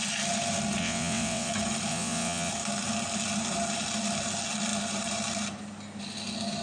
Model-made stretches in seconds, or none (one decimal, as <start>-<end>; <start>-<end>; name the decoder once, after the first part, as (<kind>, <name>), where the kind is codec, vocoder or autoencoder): 0.8-1.5 (vocoder, WaveNeXt); 1.9-2.5